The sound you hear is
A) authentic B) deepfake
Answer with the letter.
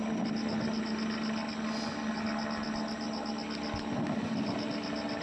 A